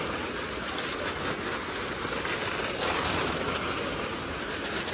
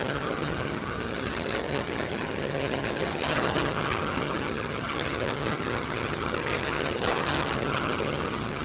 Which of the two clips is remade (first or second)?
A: second